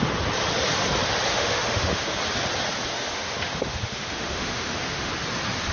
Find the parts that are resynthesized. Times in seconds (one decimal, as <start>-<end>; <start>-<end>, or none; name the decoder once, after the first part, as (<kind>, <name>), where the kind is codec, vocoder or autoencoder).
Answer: 1.3-2.2 (autoencoder, DAC-VAE); 2.9-5.1